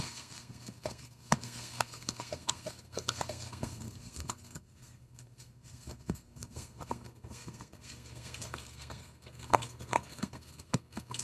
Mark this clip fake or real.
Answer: fake